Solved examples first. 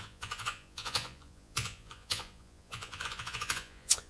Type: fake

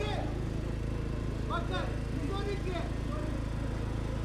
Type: real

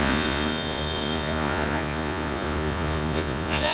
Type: fake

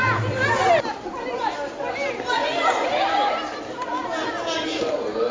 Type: real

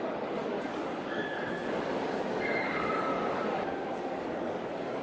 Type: fake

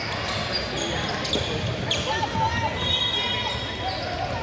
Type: real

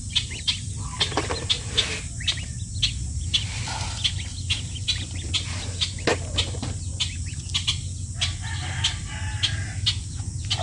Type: real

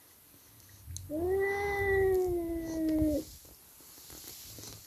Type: real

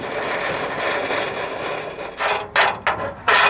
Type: real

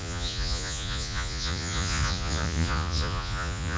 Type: fake